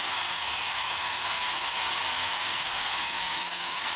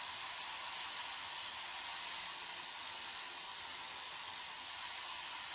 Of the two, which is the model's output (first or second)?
first